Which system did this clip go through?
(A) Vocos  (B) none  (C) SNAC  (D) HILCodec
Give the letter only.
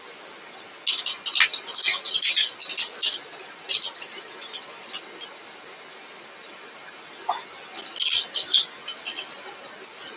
B